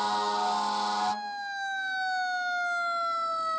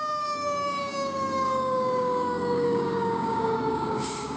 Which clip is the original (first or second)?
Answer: first